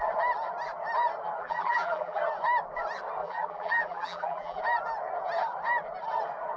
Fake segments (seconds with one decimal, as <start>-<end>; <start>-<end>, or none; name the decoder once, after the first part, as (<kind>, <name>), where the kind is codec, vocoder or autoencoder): 1.4-2.2 (vocoder, BigVGAN v2); 3.2-4.6